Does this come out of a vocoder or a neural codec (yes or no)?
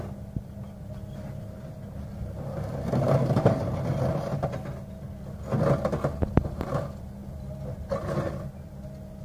no